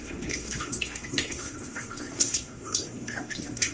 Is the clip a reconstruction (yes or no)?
yes